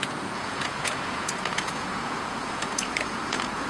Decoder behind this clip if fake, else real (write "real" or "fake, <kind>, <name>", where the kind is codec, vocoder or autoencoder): fake, vocoder, Vocos